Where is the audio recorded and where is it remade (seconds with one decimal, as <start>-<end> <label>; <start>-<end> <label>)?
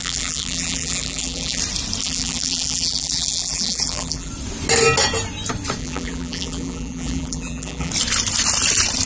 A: 0.0-1.6 remade; 1.6-2.0 recorded; 2.0-4.3 remade; 4.3-5.8 recorded; 5.8-7.9 remade; 7.9-9.1 recorded